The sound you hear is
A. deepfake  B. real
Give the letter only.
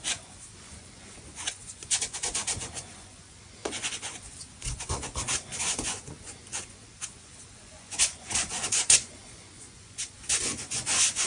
A